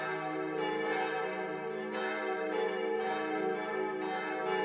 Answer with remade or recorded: recorded